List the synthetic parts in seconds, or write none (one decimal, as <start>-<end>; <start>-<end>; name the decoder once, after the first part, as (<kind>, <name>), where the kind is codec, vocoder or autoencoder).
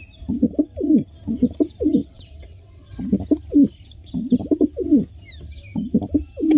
2.0-3.0 (vocoder, WaveNeXt)